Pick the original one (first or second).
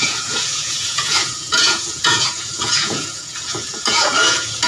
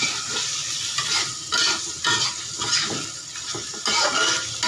second